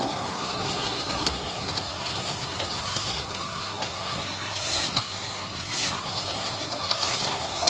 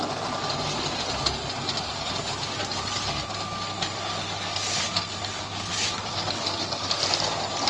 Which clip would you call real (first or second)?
second